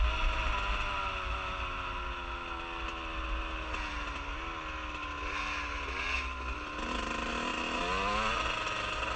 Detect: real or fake real